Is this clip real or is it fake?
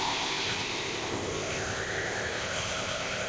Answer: fake